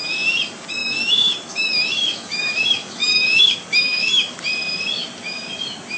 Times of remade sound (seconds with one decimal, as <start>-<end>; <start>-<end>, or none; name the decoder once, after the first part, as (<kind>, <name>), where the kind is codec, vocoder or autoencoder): 0.8-4.4 (autoencoder, DAC-VAE)